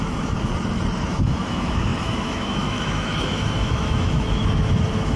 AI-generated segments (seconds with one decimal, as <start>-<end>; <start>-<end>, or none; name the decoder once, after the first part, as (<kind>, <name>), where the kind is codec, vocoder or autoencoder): 0.0-0.5 (autoencoder, DAC-VAE); 1.1-5.2